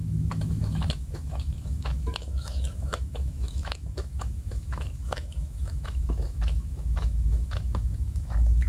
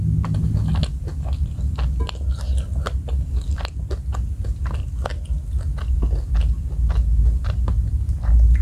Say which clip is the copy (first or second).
first